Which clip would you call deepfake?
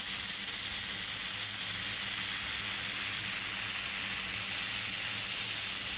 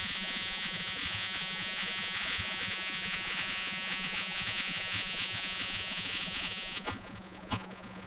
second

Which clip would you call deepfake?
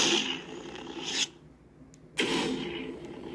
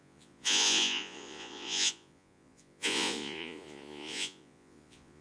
second